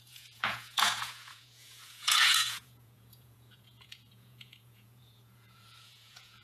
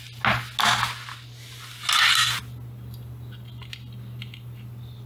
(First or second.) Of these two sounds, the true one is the second